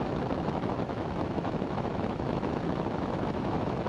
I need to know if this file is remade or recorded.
remade